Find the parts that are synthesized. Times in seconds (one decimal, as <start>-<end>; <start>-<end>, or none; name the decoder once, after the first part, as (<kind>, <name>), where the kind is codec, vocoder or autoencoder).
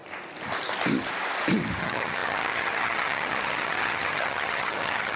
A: 1.8-5.2 (vocoder, HiFi-GAN)